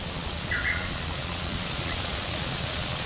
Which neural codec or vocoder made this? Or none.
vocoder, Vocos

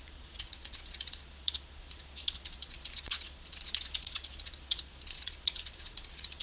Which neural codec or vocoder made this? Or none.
vocoder, Vocos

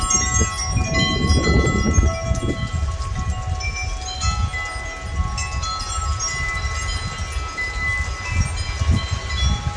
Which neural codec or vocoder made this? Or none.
none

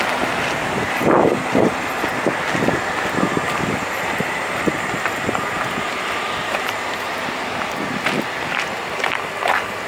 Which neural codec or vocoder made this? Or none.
none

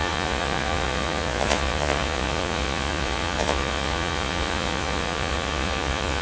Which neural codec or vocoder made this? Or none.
vocoder, Vocos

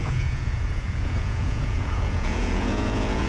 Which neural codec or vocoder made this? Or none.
vocoder, Vocos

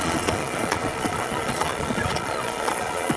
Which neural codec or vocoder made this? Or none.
vocoder, Vocos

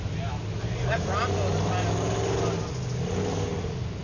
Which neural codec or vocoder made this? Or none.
none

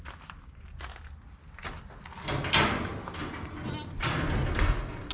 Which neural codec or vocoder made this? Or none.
none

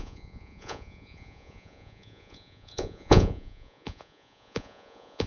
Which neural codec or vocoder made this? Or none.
vocoder, Vocos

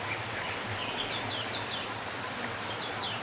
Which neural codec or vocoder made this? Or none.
none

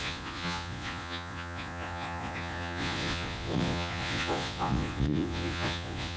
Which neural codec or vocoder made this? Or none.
vocoder, Vocos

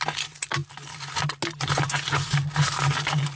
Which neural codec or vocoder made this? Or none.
none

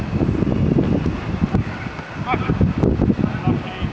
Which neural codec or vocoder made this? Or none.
none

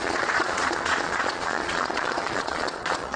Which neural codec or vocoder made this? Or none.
vocoder, Vocos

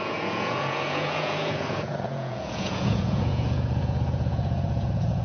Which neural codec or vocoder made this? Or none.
vocoder, Vocos